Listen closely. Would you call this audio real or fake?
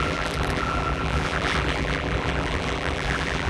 fake